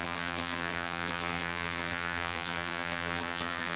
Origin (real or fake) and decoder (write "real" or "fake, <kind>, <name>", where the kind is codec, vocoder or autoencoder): fake, vocoder, BigVGAN v2